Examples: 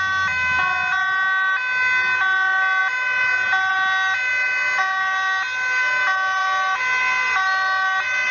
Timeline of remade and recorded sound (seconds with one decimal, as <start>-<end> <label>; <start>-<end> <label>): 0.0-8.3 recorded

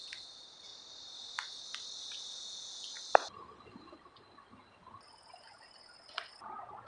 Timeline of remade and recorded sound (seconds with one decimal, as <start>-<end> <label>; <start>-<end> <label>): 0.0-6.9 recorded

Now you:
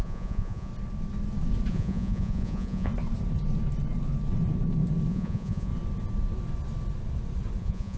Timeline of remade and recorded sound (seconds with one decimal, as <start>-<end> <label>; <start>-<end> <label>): 0.0-0.7 remade; 0.7-1.7 recorded; 1.7-2.9 remade; 2.9-5.1 recorded; 5.1-5.7 remade; 5.7-7.6 recorded; 7.6-8.0 remade